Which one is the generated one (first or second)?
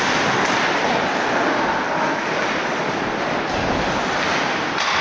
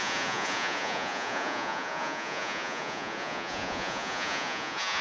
second